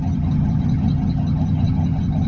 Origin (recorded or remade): remade